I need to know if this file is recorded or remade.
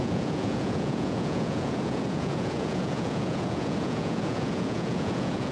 remade